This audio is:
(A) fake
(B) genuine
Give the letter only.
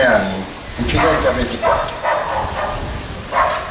B